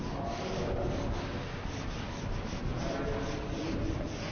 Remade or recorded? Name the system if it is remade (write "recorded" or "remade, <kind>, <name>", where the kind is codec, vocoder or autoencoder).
recorded